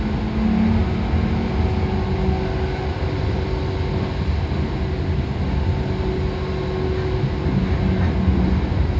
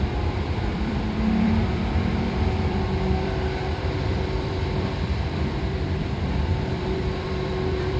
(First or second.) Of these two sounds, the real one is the first